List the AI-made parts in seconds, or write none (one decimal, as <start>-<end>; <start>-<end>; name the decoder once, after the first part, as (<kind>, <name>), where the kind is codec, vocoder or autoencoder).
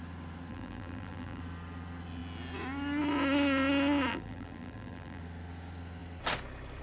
0.5-1.4 (vocoder, BigVGAN v2); 4.1-5.2